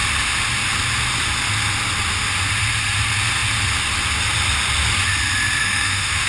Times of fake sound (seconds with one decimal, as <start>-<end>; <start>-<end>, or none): 5.6-6.3